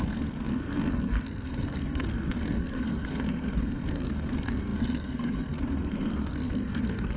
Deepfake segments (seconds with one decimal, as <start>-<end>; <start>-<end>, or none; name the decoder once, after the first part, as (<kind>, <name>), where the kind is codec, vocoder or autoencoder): 0.0-7.2 (codec, SNAC)